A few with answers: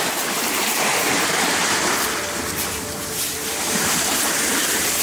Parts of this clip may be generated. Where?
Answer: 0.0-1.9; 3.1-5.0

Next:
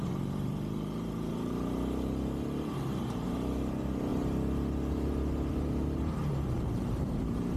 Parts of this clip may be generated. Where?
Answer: 0.0-4.1; 5.5-7.6

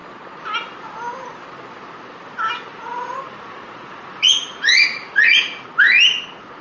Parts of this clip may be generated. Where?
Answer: 2.7-5.4

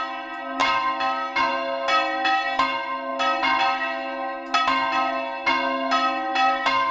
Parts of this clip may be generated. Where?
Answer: none

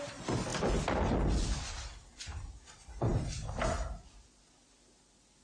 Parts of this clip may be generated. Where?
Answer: none